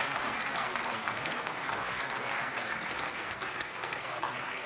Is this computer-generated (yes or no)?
yes